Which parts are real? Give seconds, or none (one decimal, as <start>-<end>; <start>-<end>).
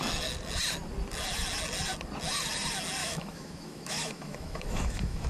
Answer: 0.0-3.0